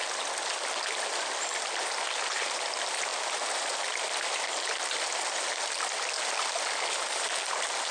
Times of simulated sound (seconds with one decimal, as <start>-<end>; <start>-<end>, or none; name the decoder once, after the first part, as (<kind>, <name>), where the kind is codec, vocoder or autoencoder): none